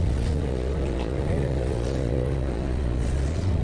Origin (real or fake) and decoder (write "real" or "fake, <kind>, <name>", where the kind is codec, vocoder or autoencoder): fake, vocoder, Vocos